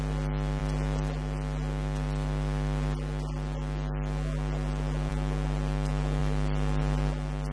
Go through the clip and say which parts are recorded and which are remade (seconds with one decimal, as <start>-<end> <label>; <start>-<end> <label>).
0.0-7.5 recorded

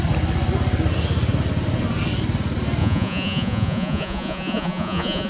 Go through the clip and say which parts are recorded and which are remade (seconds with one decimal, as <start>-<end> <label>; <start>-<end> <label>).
0.0-2.8 recorded; 2.8-5.3 remade

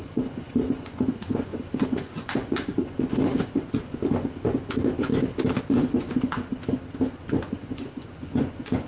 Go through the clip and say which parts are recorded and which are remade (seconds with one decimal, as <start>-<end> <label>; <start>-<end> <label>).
0.0-5.1 remade; 5.1-5.6 recorded; 5.6-6.5 remade; 6.5-7.1 recorded; 7.1-8.9 remade

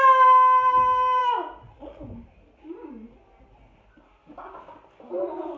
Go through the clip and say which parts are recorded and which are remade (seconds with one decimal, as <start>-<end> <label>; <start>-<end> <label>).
0.0-5.6 recorded

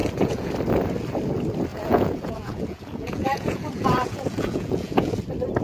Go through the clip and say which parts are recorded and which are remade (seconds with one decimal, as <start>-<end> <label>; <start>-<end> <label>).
0.0-0.5 remade; 0.5-1.7 recorded; 1.7-5.1 remade; 5.1-5.6 recorded